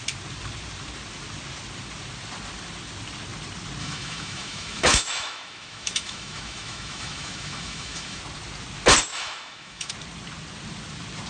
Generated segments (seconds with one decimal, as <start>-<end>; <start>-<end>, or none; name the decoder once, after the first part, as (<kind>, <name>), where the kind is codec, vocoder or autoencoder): 3.8-8.2 (autoencoder, DAC-VAE); 9.1-9.9